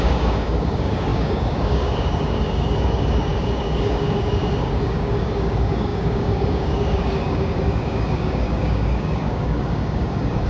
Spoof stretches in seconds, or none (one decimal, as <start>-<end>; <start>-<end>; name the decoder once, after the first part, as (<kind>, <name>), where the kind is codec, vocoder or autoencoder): 0.0-10.5 (codec, DAC)